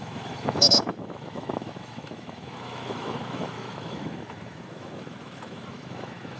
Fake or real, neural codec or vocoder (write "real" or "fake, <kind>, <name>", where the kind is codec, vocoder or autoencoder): fake, autoencoder, DAC-VAE